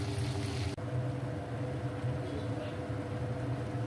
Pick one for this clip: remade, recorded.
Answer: recorded